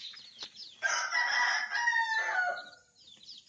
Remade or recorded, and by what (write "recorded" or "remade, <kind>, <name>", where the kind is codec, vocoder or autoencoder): recorded